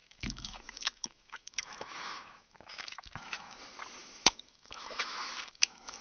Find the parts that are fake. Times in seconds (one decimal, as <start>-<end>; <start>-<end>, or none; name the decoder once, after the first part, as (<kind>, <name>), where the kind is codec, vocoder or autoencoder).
0.0-3.6 (autoencoder, DAC-VAE); 4.0-6.0